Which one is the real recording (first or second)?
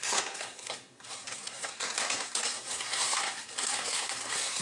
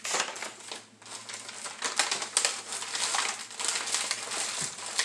second